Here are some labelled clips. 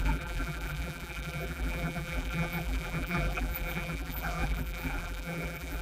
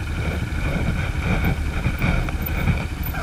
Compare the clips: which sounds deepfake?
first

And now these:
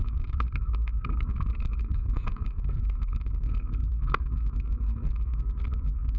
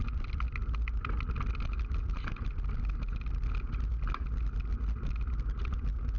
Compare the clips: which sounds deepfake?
first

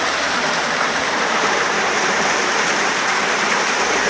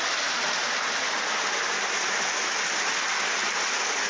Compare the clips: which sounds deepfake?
first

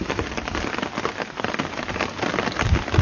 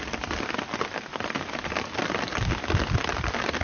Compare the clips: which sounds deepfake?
second